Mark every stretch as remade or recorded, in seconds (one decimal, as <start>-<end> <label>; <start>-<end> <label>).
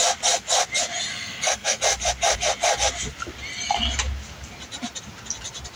0.0-1.1 recorded; 1.1-1.8 remade; 1.8-5.8 recorded